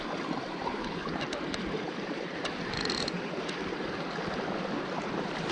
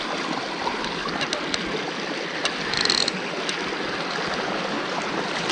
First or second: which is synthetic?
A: first